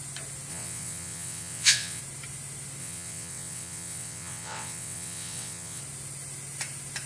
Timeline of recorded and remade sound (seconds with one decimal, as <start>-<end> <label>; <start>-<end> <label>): 0.0-0.5 recorded; 0.5-2.0 remade; 2.0-2.8 recorded; 2.8-5.8 remade; 5.8-7.1 recorded